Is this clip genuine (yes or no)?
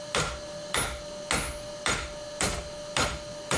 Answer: yes